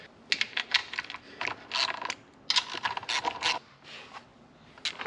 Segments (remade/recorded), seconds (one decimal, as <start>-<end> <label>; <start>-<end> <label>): 0.0-5.1 recorded